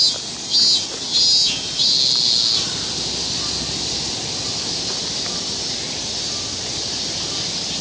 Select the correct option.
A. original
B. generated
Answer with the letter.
A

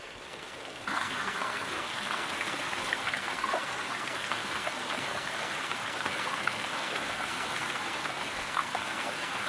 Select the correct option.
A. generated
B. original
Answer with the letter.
A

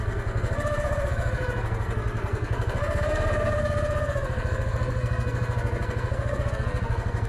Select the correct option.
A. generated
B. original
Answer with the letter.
A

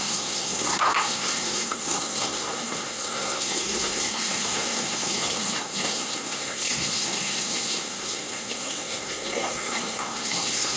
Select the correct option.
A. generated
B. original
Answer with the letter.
A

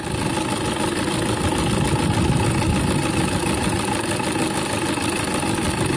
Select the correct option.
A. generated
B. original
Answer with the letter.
B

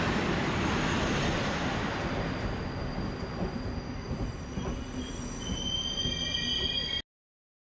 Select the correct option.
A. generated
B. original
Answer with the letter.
B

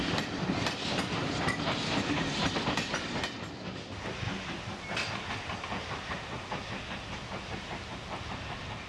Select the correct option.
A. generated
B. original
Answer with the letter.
B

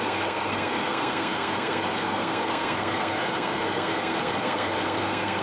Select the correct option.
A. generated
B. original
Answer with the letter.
A